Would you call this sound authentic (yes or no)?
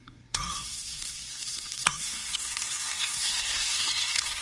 no